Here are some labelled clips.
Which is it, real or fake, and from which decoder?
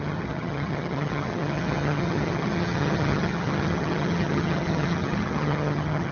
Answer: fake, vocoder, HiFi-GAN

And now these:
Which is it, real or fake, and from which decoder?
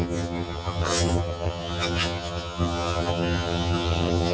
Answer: fake, vocoder, HiFi-GAN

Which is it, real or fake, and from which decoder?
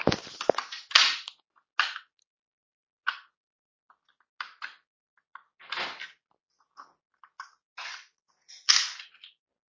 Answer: real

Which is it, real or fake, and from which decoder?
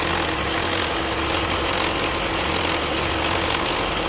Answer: real